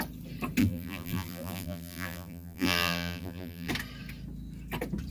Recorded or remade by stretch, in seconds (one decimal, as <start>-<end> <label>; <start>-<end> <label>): 0.0-0.6 recorded; 0.6-3.7 remade; 3.7-5.1 recorded

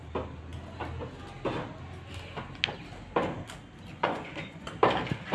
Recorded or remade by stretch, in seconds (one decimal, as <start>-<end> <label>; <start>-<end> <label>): 0.0-3.9 recorded; 3.9-4.7 remade; 4.7-5.3 recorded

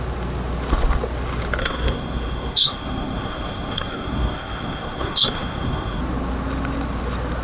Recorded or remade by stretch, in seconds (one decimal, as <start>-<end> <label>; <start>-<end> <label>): 0.0-1.6 recorded; 1.6-6.0 remade; 6.0-7.4 recorded

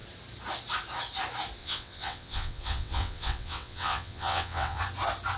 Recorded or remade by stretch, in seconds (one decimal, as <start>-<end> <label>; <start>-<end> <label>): 0.0-1.6 recorded; 1.6-4.8 remade; 4.8-5.4 recorded

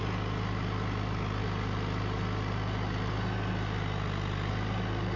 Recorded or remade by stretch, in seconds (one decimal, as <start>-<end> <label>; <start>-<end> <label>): 0.0-5.2 recorded

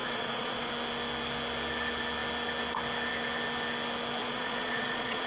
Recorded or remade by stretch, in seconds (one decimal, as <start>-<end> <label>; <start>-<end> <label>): 0.0-0.7 remade; 0.7-4.2 recorded; 4.2-5.3 remade